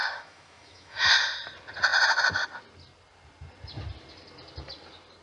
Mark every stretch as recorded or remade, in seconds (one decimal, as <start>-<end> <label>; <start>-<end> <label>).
0.0-1.1 remade; 1.1-5.2 recorded